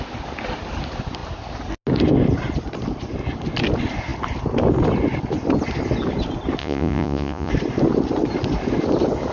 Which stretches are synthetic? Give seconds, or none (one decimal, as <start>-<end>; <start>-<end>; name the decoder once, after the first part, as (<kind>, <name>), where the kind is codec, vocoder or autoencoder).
6.6-7.5 (vocoder, Vocos)